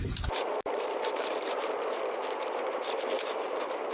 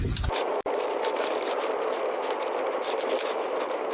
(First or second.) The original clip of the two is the second